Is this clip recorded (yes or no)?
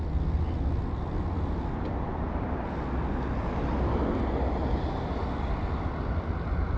yes